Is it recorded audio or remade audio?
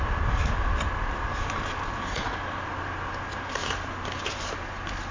recorded